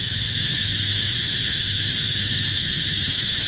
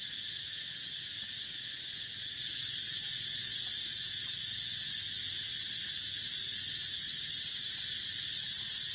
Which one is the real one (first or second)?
second